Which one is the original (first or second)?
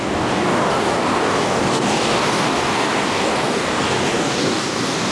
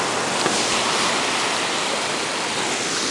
second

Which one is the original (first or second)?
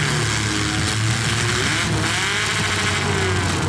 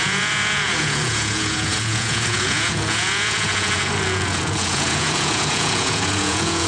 first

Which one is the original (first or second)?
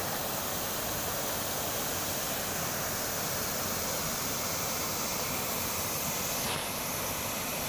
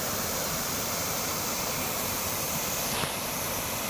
first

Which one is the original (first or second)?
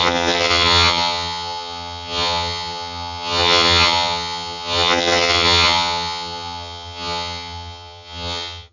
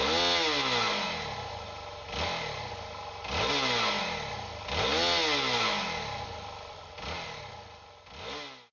second